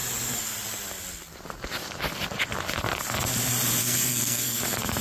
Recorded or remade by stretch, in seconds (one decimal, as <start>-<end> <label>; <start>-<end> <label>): 0.0-3.8 recorded; 3.8-4.6 remade; 4.6-5.0 recorded